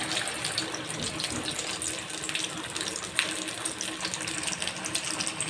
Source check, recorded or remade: recorded